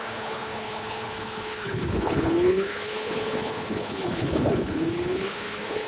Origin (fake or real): fake